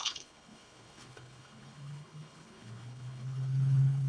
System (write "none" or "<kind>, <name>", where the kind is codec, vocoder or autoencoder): codec, HILCodec